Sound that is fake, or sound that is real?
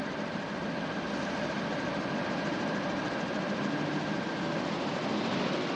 real